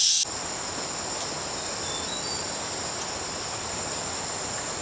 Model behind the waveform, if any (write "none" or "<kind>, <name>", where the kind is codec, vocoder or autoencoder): none